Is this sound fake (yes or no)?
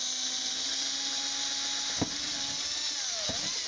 no